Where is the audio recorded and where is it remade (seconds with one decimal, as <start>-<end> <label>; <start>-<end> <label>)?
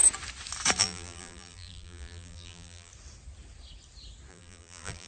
0.0-0.8 recorded; 0.8-2.9 remade; 2.9-4.3 recorded; 4.3-5.1 remade